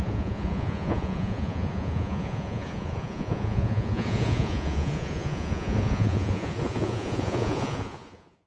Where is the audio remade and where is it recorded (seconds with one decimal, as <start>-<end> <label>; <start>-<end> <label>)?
0.0-8.5 remade